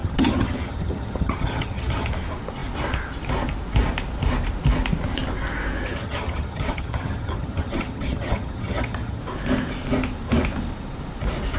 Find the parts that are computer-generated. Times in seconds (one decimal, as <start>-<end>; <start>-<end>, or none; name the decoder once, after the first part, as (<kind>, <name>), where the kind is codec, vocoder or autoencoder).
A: 0.0-2.1 (vocoder, HiFi-GAN); 5.9-9.2